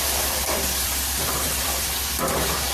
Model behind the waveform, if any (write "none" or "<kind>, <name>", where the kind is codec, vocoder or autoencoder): vocoder, BigVGAN v2